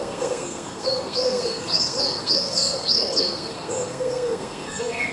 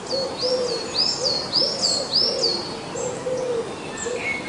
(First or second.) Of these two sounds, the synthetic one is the first